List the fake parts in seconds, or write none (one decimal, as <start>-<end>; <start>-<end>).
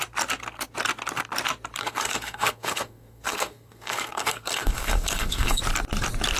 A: 1.8-5.6